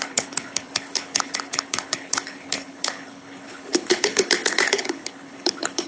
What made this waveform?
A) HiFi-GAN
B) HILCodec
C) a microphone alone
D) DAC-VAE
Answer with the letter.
B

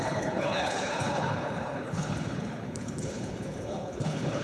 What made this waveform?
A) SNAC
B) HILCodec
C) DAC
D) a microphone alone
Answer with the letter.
B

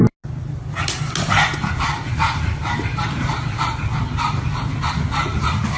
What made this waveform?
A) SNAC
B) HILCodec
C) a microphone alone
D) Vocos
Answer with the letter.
C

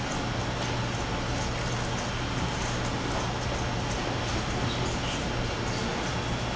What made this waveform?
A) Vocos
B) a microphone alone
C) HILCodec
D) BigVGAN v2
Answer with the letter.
B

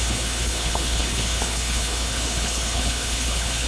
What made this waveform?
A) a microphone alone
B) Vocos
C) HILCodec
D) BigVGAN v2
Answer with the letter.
C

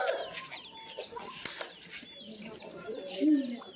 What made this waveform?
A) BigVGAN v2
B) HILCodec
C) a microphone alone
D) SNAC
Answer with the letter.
C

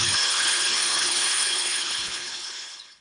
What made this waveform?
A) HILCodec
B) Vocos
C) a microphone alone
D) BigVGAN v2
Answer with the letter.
A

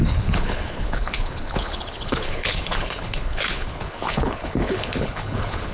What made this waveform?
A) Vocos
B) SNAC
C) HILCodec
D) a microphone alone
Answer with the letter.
C